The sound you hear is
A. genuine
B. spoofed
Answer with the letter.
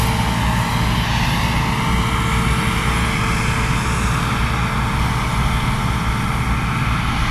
A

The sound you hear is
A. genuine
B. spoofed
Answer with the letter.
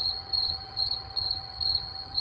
B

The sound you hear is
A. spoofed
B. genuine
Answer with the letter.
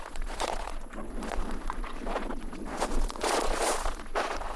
A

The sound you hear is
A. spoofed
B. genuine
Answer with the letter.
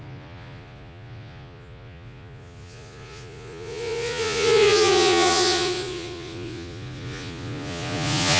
A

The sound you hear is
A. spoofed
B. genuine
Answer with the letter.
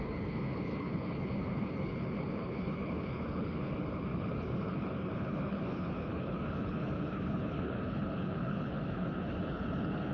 A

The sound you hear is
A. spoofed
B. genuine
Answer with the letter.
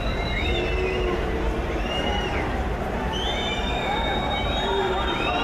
A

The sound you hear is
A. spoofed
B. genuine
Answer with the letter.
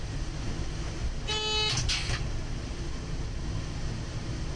B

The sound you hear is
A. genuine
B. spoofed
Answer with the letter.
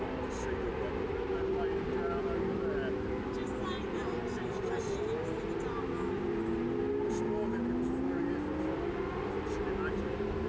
A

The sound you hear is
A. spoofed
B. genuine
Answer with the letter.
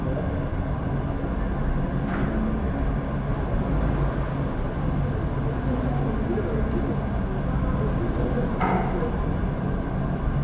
B